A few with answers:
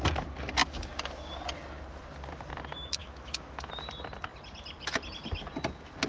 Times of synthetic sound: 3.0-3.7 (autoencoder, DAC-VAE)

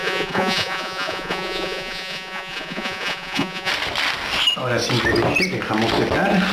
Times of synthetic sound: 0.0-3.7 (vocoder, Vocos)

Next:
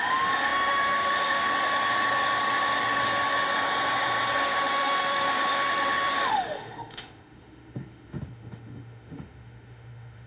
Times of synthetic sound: 0.0-1.5 (autoencoder, DAC-VAE); 4.4-10.3